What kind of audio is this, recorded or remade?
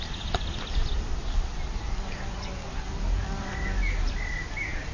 recorded